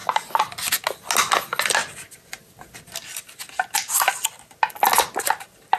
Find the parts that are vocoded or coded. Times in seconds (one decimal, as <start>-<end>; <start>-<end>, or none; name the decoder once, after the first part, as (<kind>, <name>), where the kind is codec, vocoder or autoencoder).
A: none